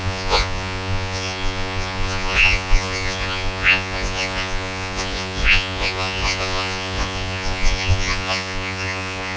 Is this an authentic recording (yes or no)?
no